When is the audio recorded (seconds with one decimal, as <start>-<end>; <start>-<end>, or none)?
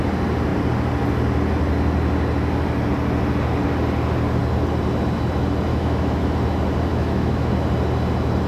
0.0-5.7; 6.3-6.9; 7.5-8.5